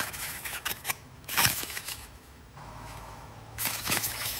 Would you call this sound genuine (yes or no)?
no